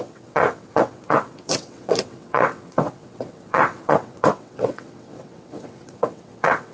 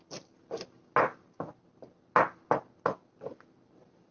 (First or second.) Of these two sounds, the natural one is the second